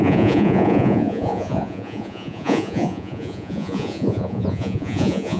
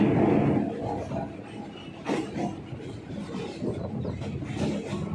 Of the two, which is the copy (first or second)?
first